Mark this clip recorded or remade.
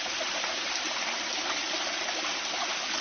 recorded